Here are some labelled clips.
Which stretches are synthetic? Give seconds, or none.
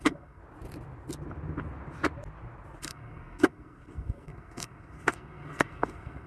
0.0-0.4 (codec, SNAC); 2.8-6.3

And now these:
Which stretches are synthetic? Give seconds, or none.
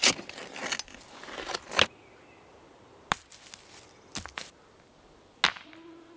none